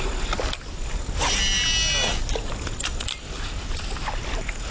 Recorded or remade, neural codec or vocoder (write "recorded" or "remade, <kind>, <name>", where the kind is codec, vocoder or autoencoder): recorded